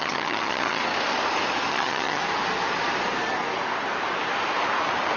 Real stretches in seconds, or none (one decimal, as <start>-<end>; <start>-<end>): 0.8-1.7; 2.2-5.2